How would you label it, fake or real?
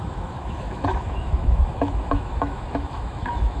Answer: fake